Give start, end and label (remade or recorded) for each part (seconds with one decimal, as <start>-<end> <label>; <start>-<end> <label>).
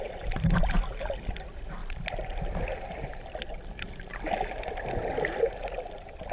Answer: 0.0-6.3 recorded